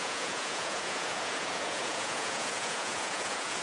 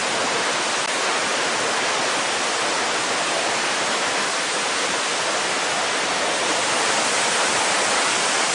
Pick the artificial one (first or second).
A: first